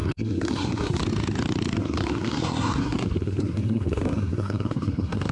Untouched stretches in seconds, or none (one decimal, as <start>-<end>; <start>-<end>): 1.0-1.8